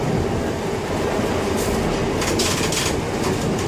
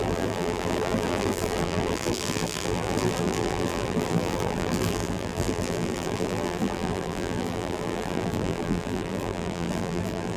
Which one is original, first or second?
first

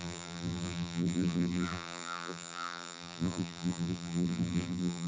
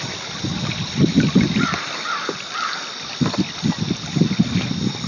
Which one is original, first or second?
second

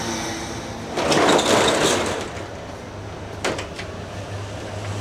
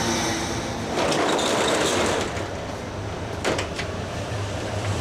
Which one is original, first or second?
first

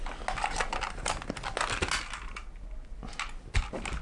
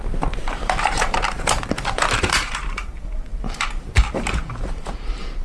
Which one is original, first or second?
first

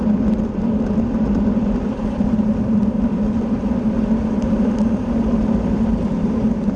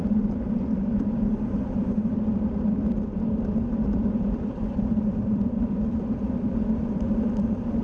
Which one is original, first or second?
first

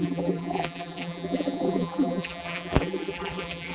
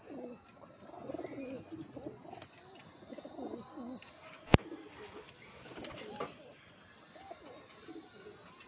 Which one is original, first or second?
second